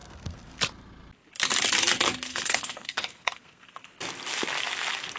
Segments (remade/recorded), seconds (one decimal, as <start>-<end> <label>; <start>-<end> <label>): 0.0-0.6 remade; 0.6-2.3 recorded; 2.3-3.9 remade; 3.9-5.2 recorded

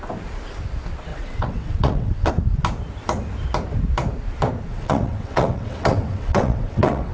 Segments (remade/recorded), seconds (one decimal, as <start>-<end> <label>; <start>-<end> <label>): 0.0-1.1 recorded; 1.1-2.3 remade; 2.3-4.7 recorded; 4.7-7.1 remade

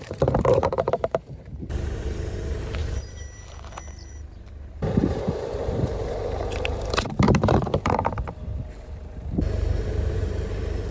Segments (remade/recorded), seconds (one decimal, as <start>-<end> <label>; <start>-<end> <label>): 0.0-10.9 remade

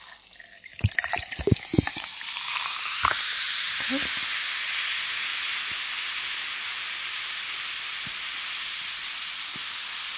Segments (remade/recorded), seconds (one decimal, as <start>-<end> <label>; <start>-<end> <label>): 0.0-0.7 recorded; 0.7-3.9 remade; 3.9-10.2 recorded

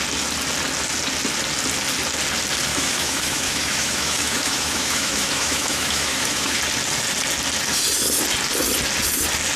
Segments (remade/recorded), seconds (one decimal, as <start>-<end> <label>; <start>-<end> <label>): 0.0-2.7 recorded; 2.7-6.6 remade; 6.6-9.6 recorded

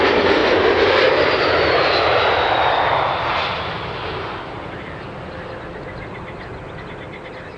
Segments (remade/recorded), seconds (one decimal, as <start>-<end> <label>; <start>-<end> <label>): 0.0-7.6 recorded